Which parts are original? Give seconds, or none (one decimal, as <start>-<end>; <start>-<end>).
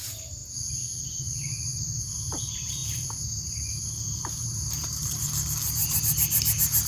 0.4-2.0; 5.8-6.9